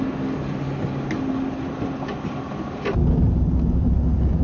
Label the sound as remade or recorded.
recorded